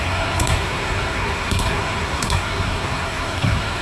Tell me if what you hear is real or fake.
fake